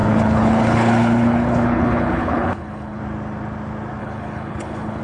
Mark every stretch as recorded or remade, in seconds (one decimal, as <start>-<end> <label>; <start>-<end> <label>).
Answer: 0.0-3.0 remade; 3.0-4.0 recorded; 4.0-5.0 remade